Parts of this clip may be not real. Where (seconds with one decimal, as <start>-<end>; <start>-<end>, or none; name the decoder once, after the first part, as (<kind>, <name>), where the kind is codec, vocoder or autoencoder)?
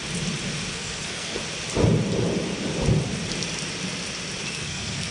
0.7-1.4 (codec, SNAC); 4.5-5.1